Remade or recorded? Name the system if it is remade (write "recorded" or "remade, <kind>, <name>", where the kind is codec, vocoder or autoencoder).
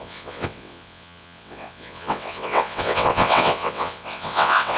remade, vocoder, WaveNeXt